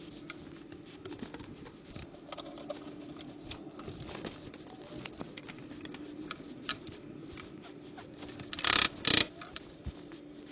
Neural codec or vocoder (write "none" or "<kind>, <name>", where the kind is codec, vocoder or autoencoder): none